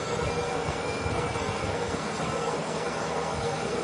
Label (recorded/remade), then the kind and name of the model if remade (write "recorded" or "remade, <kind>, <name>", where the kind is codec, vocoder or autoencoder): remade, codec, SNAC